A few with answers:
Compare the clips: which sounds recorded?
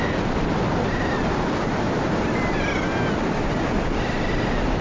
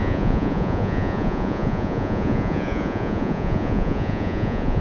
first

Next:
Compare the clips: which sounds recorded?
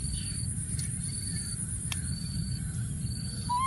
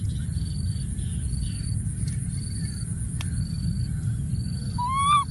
second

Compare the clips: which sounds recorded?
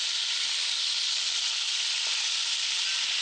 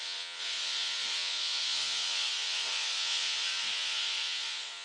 first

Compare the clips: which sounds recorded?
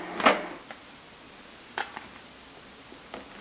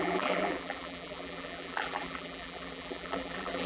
first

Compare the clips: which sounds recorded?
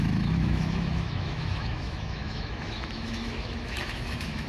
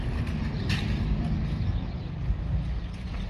second